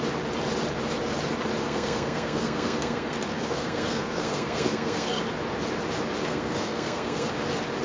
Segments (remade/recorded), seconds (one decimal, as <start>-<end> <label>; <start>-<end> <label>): 0.0-1.6 recorded; 1.6-5.2 remade; 5.2-6.2 recorded; 6.2-7.3 remade; 7.3-7.8 recorded